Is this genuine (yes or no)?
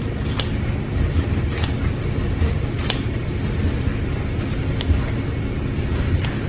yes